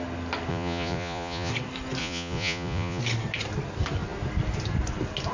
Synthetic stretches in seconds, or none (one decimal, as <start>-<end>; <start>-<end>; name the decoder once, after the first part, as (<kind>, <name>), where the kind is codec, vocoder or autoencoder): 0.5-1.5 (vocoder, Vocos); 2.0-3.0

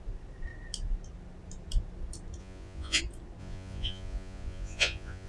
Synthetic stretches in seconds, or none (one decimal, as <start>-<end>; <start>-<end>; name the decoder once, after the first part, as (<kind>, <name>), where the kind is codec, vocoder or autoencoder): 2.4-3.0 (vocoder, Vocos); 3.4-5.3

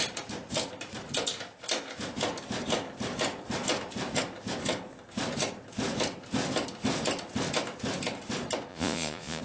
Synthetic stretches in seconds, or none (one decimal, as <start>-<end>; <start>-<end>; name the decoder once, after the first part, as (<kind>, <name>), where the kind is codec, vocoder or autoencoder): 8.7-9.4 (vocoder, Vocos)

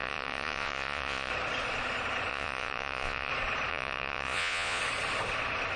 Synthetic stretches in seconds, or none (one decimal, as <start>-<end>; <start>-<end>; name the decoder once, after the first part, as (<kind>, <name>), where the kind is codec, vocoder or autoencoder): 0.0-1.3 (vocoder, Vocos); 2.3-3.3; 3.7-4.8

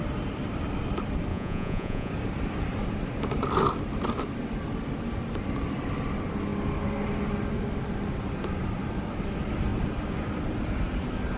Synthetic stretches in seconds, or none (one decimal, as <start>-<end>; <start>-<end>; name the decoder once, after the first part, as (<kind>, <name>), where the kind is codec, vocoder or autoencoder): 1.3-2.1 (vocoder, Vocos)